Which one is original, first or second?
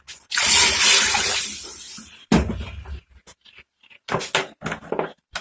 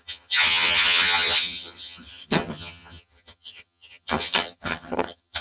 first